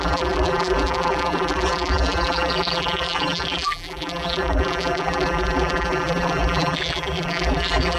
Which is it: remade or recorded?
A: remade